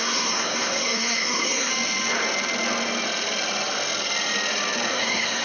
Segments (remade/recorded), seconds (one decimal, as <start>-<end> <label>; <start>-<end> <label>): 0.0-1.7 remade; 1.7-4.9 recorded; 4.9-5.4 remade